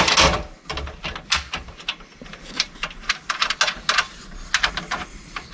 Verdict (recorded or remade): recorded